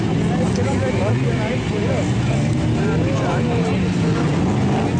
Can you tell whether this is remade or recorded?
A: recorded